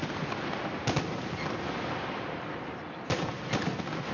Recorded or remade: recorded